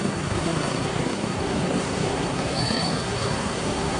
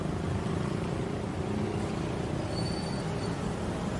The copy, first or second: first